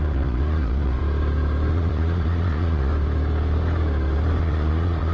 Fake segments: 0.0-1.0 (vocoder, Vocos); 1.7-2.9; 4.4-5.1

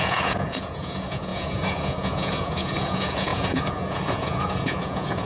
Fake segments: 0.0-5.3 (vocoder, Vocos)

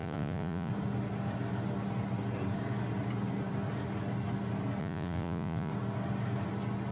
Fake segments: 0.0-0.7 (vocoder, Vocos); 4.8-5.7

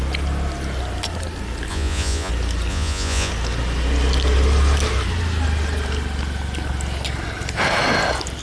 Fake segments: 1.7-2.3 (vocoder, Vocos); 2.7-3.3

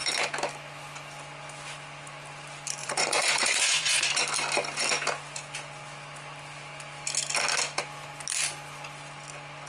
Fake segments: 2.8-4.1 (vocoder, Vocos)

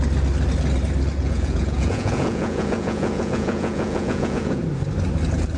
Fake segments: 1.2-4.6 (vocoder, Vocos)

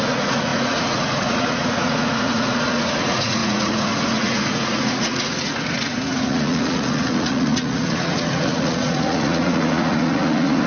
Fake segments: 0.0-10.7 (vocoder, Vocos)